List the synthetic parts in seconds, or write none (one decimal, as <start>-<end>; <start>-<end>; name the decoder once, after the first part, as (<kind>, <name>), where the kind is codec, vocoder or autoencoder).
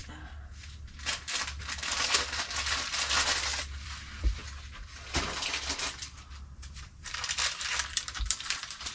3.6-4.4 (vocoder, BigVGAN v2); 5.3-8.9